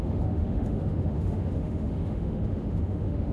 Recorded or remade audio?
remade